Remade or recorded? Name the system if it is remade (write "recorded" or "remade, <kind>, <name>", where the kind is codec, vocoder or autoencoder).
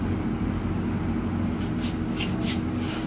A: recorded